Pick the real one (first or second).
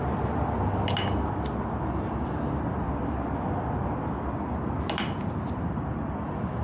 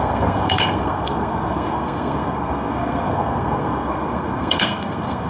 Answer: first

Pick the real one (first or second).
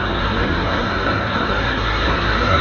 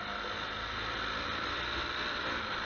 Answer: second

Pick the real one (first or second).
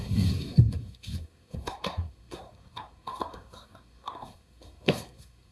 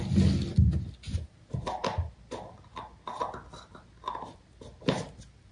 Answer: second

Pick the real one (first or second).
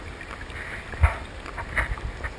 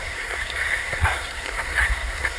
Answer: first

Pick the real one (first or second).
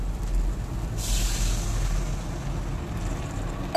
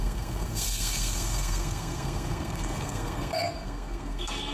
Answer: first